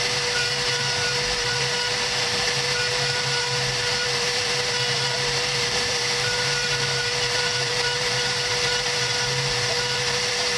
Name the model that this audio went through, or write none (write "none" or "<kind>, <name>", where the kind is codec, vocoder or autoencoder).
vocoder, BigVGAN v2